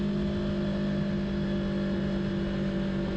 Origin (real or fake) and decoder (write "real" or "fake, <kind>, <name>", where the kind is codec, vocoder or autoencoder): real